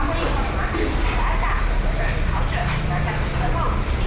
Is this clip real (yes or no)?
yes